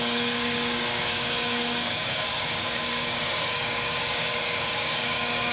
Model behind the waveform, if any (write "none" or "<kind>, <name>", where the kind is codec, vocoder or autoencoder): codec, DAC